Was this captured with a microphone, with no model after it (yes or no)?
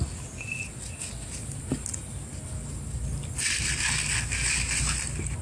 yes